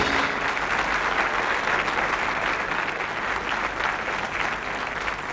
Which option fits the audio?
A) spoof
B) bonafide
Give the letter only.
B